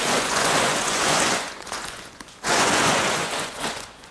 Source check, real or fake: fake